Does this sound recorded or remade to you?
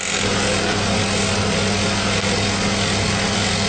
recorded